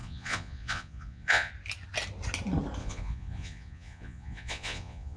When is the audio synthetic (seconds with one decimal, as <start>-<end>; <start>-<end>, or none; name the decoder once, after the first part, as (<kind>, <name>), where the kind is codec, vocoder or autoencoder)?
0.0-1.5 (vocoder, Vocos); 2.8-5.2